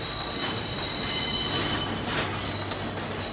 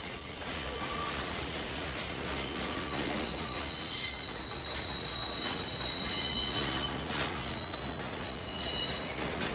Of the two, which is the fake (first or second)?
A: second